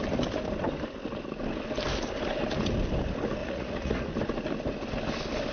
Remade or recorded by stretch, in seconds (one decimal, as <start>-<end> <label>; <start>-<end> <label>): 0.0-3.4 recorded; 3.4-3.9 remade; 3.9-5.5 recorded